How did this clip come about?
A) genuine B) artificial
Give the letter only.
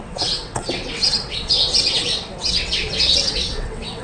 B